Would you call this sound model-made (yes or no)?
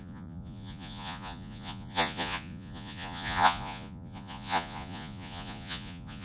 yes